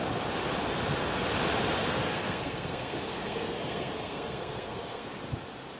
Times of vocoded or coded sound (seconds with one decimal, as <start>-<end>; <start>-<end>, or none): 1.9-5.1